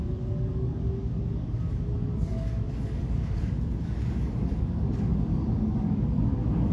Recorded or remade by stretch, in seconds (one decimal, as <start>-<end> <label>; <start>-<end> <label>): 0.0-6.7 remade